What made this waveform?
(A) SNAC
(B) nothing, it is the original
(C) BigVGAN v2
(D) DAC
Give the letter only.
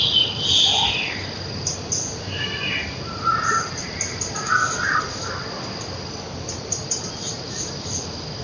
B